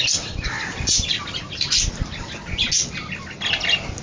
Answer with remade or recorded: recorded